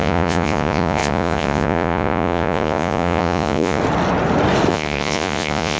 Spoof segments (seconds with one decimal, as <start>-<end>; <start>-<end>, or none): 0.0-3.8; 4.7-5.8